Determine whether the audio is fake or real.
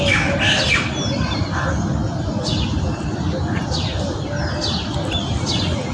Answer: real